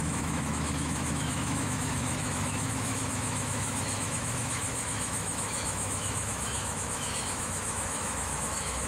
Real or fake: fake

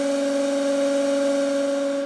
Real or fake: real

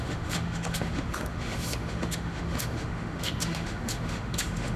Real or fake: fake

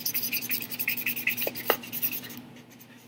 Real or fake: real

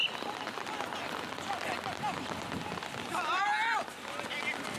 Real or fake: real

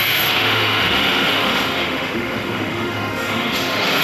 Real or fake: fake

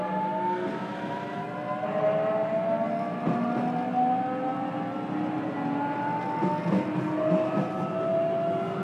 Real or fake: real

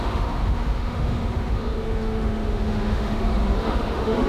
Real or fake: fake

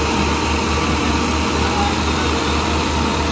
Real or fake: real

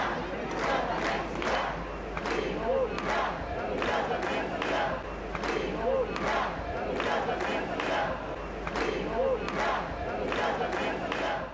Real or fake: real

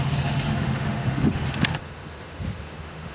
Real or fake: fake